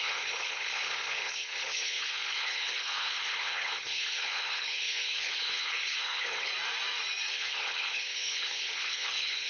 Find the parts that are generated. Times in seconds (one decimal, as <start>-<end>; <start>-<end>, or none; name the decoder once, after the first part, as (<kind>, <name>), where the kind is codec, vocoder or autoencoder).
0.0-6.5 (codec, HILCodec); 7.3-9.5